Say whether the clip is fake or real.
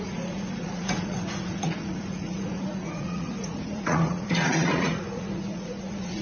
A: fake